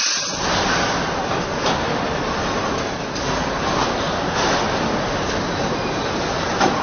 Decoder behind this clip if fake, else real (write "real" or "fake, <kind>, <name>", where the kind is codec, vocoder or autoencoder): real